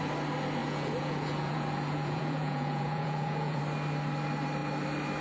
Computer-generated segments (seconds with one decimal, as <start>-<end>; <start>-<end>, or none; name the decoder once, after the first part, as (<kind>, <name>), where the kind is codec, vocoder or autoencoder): 0.6-3.6 (vocoder, Vocos)